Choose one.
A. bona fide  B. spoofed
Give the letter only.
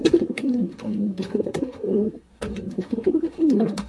B